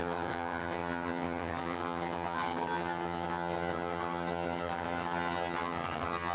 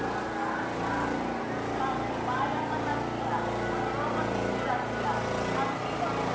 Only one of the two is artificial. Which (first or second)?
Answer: first